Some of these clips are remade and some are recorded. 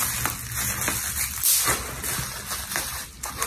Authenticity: recorded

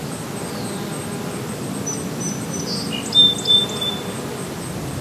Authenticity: recorded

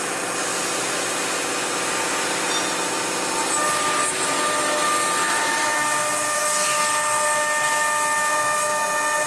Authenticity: recorded